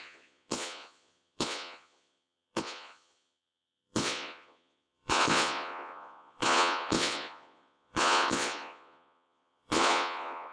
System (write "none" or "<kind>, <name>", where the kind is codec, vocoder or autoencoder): vocoder, Vocos